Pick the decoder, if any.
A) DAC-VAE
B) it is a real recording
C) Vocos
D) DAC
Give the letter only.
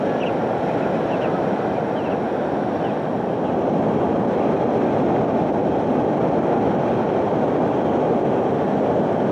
B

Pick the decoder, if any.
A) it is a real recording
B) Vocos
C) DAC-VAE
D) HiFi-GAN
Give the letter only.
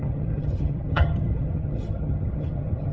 D